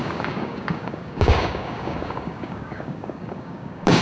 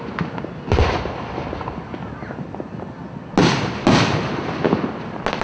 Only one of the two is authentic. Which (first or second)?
second